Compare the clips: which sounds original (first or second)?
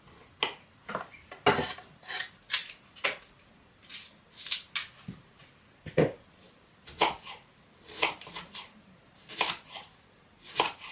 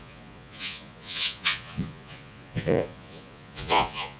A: first